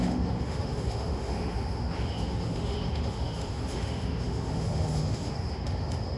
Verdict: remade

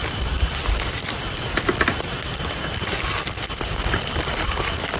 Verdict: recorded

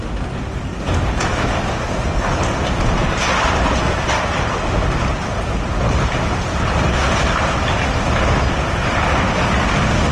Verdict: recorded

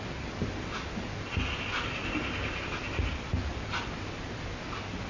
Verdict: recorded